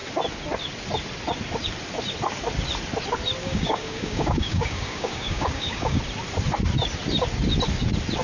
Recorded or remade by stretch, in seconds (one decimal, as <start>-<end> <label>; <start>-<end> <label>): 0.0-3.4 recorded; 3.4-6.0 remade; 6.0-8.2 recorded